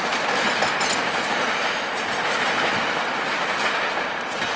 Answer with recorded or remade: recorded